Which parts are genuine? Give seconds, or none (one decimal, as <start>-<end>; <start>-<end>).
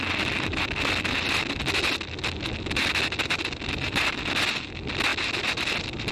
0.0-6.1